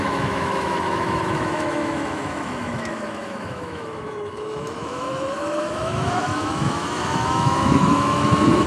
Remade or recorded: remade